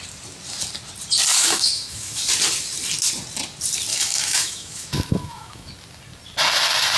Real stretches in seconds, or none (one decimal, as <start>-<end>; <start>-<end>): 0.0-1.3; 2.2-3.9; 5.7-7.0